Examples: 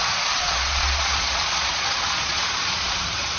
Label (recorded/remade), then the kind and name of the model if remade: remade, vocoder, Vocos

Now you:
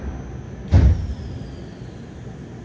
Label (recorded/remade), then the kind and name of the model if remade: recorded